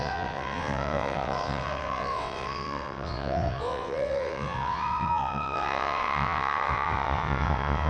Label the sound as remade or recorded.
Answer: remade